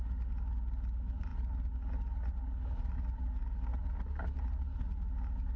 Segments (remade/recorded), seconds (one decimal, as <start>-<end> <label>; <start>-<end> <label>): 0.0-5.6 recorded